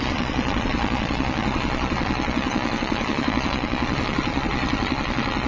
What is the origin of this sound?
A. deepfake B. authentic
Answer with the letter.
A